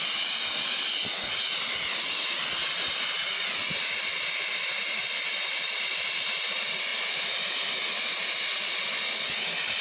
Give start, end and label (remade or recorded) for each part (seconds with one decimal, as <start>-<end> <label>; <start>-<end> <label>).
0.0-9.8 recorded